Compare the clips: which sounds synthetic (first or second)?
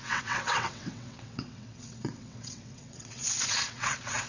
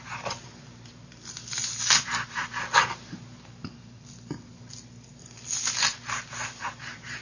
first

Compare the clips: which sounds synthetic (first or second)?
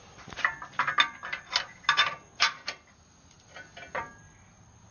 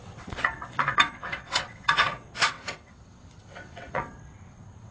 second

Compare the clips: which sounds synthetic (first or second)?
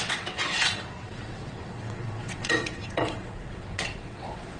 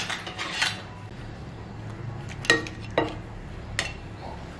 first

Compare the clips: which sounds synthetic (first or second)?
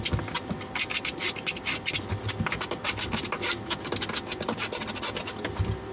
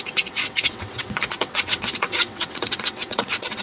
second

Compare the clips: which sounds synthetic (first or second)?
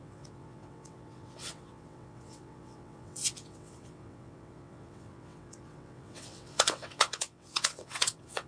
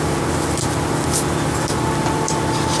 first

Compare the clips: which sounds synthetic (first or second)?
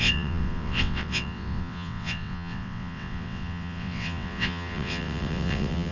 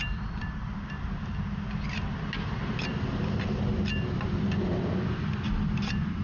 first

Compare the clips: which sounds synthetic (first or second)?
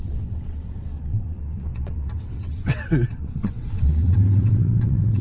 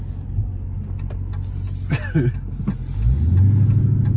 first